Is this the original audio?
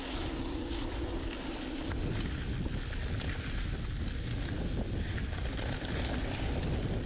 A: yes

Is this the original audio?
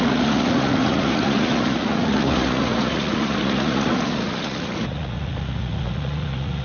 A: no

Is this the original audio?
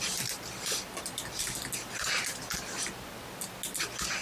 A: yes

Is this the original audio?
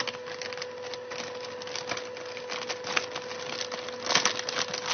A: yes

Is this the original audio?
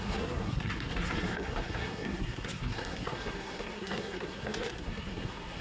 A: no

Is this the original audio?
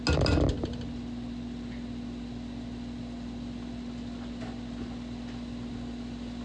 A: yes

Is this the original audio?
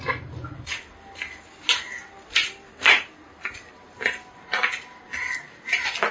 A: yes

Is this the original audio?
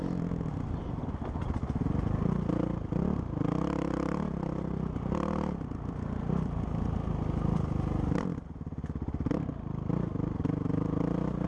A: yes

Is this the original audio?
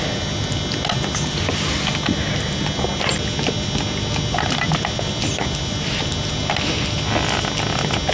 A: yes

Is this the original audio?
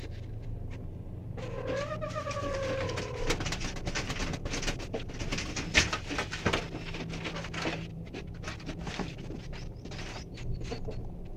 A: yes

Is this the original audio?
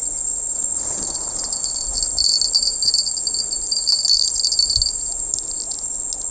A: yes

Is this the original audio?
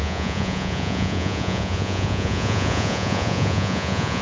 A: no